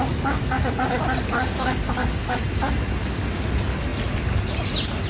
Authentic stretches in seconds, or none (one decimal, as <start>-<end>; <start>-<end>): 0.0-5.1